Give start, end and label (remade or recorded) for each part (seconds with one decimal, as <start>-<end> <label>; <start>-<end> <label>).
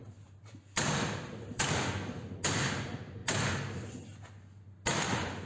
0.0-5.5 recorded